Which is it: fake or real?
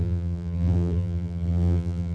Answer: fake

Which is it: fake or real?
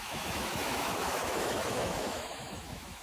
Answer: fake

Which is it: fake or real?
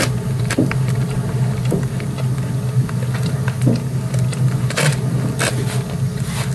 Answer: real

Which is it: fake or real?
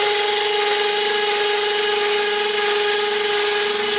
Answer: real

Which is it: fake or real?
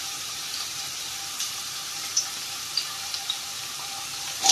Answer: fake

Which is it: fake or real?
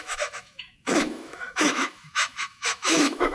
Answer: fake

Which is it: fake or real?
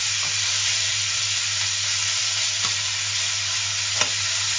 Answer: real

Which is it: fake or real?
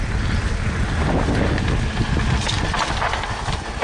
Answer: real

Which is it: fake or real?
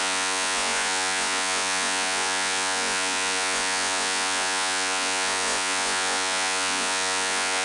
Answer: fake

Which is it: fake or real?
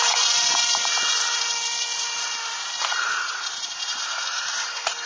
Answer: fake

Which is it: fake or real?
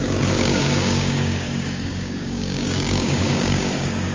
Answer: fake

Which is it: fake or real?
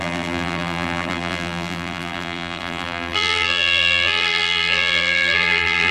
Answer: fake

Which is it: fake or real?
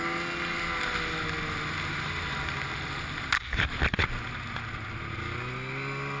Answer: real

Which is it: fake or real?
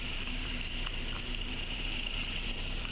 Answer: fake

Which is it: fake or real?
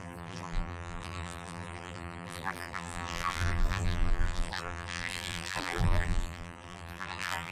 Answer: fake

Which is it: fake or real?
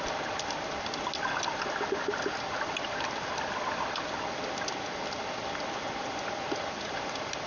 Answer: real